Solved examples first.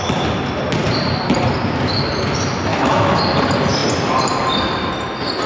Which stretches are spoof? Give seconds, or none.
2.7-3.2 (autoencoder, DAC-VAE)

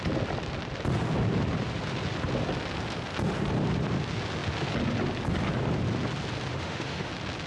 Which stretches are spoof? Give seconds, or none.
6.5-7.1 (autoencoder, DAC-VAE)

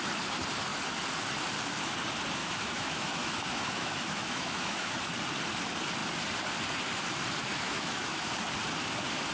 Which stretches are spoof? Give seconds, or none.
2.4-4.9 (autoencoder, DAC-VAE); 7.5-8.2

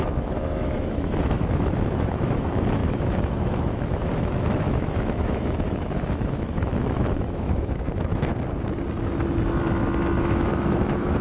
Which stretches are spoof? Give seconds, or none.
0.0-8.3 (autoencoder, DAC-VAE); 10.2-11.2